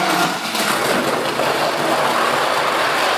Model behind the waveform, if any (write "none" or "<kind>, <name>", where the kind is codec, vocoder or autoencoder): none